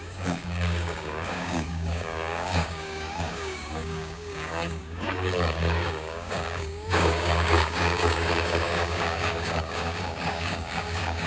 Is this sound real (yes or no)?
no